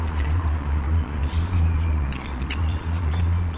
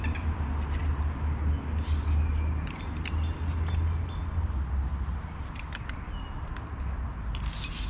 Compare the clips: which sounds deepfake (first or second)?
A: first